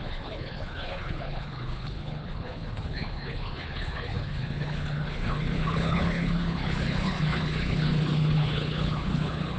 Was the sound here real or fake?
fake